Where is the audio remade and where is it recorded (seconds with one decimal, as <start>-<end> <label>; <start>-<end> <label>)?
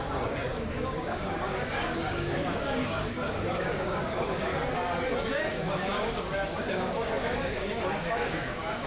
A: 0.0-4.5 remade; 4.5-5.5 recorded; 5.5-8.9 remade